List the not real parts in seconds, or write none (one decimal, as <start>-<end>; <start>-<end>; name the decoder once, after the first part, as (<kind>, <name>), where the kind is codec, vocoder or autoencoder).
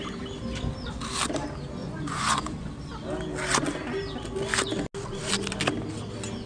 1.8-2.7 (vocoder, Vocos)